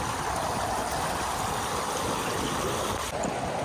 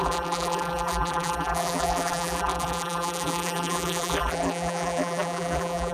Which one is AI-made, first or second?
second